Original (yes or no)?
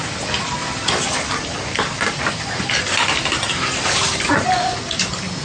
yes